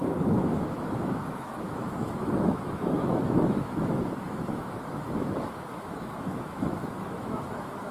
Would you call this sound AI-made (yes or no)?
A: yes